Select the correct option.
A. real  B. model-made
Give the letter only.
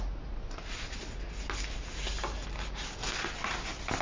A